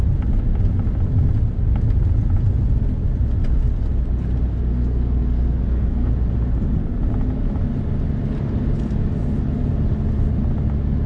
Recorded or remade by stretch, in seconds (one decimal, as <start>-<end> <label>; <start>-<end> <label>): 0.0-4.5 recorded; 4.5-6.1 remade; 6.1-11.1 recorded